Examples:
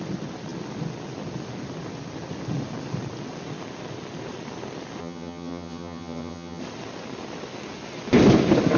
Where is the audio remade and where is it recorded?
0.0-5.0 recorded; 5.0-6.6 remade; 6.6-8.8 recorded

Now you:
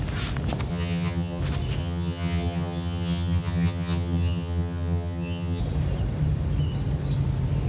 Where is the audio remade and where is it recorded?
0.0-0.7 recorded; 0.7-1.4 remade; 1.4-1.8 recorded; 1.8-5.6 remade; 5.6-7.7 recorded

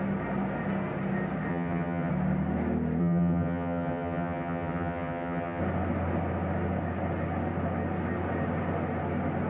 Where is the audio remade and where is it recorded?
0.0-1.5 recorded; 1.5-2.1 remade; 2.1-3.0 recorded; 3.0-5.6 remade; 5.6-9.5 recorded

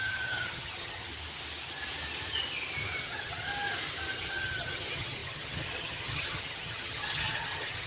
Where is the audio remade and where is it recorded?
0.0-1.1 remade; 1.1-3.0 recorded; 3.0-3.5 remade; 3.5-4.1 recorded; 4.1-7.9 remade

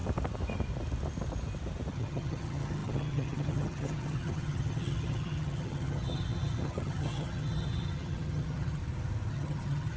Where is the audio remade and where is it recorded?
0.0-1.9 recorded; 1.9-8.8 remade; 8.8-9.3 recorded; 9.3-10.0 remade